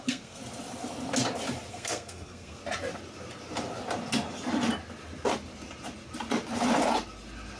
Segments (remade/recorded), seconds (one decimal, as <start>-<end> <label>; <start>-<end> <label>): 0.0-0.4 remade; 0.4-1.7 recorded; 1.7-2.6 remade; 2.6-7.6 recorded